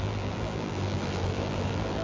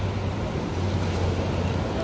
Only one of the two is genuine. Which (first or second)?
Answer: second